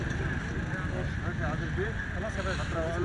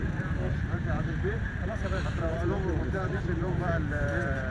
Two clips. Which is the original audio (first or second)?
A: first